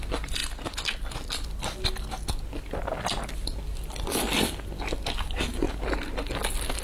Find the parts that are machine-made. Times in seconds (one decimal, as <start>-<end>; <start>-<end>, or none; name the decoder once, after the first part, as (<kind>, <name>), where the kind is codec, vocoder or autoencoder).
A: none